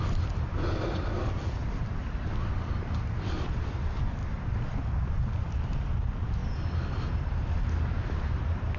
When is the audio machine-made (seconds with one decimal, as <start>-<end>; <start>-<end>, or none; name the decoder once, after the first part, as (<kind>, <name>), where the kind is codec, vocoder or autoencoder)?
none